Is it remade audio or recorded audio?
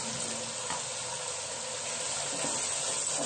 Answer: recorded